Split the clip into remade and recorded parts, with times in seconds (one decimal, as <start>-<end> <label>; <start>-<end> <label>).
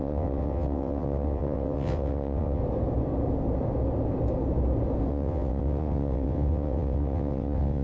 0.0-2.6 remade; 2.6-5.1 recorded; 5.1-7.8 remade